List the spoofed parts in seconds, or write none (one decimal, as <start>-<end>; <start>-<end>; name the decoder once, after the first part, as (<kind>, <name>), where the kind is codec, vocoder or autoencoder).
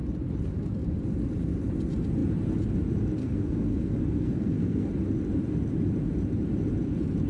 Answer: 3.2-4.9 (codec, SNAC)